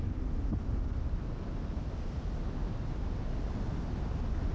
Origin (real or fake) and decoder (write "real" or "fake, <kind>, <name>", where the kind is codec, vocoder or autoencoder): real